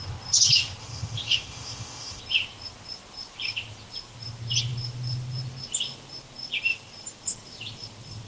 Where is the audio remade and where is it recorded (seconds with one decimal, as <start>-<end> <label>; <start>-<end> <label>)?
0.0-0.8 recorded; 0.8-2.2 remade; 2.2-8.3 recorded